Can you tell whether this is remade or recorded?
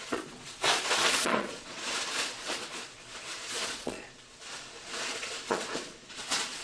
remade